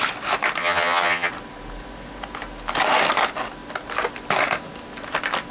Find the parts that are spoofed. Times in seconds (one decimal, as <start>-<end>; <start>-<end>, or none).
0.6-1.3